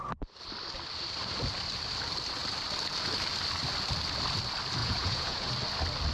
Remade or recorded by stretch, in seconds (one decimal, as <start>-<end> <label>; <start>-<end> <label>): 0.0-4.8 recorded; 4.8-5.5 remade; 5.5-6.1 recorded